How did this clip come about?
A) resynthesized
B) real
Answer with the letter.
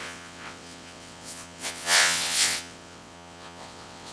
A